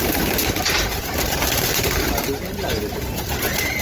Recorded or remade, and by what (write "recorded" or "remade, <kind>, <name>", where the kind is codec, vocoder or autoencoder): remade, vocoder, BigVGAN v2